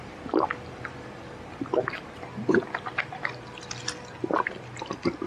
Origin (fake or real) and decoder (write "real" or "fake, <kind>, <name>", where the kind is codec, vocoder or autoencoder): real